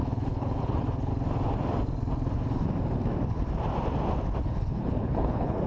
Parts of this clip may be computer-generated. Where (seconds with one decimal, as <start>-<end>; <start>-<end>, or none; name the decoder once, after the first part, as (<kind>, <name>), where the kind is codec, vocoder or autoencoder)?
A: 0.0-1.1 (codec, HILCodec); 4.4-5.7